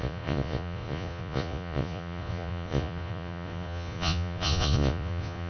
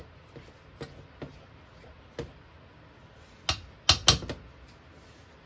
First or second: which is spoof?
first